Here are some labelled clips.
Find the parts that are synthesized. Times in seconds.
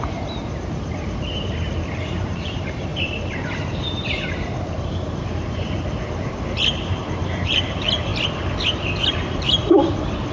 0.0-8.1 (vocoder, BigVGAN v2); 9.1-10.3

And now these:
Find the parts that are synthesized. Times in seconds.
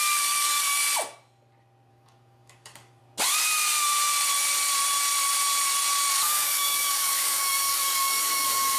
0.0-0.8 (codec, DAC); 1.9-3.0; 6.1-8.8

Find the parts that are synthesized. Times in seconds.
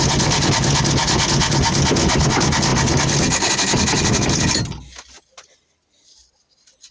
none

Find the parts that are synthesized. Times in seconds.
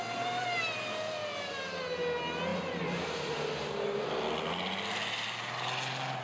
2.5-4.3 (vocoder, BigVGAN v2)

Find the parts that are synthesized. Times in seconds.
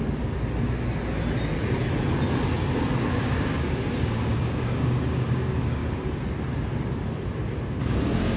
3.1-5.8 (codec, DAC); 7.8-8.4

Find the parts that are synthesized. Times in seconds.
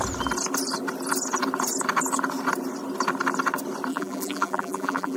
3.9-5.2 (vocoder, BigVGAN v2)